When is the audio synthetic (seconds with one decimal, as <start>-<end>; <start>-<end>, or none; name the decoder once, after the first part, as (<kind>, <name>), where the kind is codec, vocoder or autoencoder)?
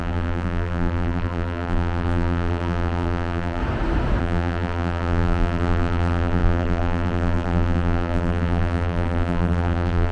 0.0-3.6 (vocoder, BigVGAN v2); 4.2-10.1